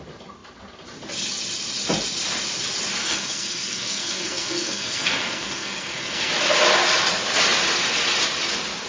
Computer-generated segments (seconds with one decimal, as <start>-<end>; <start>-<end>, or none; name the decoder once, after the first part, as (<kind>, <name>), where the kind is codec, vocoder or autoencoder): 3.0-6.3 (codec, SNAC)